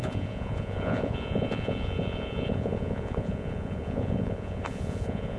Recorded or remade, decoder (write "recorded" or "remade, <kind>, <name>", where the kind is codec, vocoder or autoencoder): remade, vocoder, Vocos